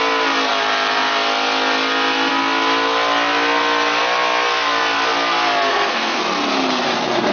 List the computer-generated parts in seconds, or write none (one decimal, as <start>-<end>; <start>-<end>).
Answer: 5.7-6.2